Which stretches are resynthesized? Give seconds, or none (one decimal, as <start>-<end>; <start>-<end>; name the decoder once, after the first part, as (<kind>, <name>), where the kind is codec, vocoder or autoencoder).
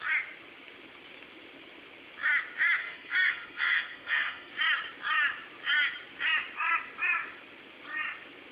2.8-4.5 (codec, SNAC)